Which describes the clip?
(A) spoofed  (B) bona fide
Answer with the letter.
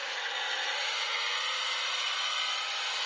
B